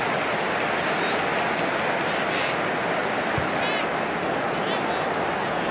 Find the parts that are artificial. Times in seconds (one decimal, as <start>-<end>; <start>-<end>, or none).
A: none